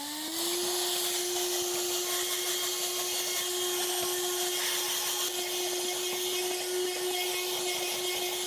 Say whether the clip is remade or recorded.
recorded